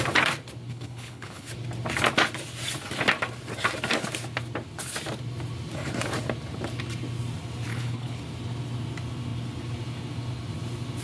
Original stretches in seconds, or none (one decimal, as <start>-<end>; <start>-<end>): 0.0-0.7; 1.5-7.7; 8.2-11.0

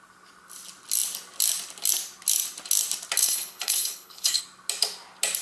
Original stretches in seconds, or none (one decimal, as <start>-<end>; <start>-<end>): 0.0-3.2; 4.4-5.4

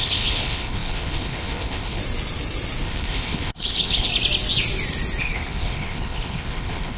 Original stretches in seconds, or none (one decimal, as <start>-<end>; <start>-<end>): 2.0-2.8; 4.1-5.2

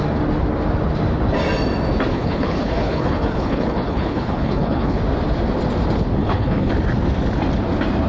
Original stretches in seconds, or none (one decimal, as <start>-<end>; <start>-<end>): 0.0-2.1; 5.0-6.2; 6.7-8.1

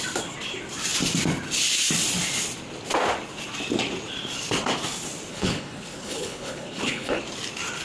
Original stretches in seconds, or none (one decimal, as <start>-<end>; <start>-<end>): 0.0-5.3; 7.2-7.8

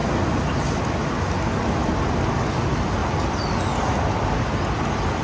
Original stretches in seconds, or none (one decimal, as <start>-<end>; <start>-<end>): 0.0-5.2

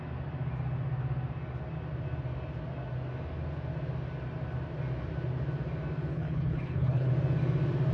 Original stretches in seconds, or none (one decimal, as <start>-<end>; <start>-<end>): 0.0-6.1; 7.1-7.9

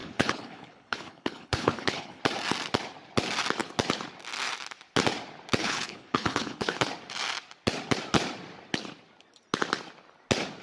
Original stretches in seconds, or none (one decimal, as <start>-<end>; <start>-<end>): 2.2-5.6; 6.9-10.6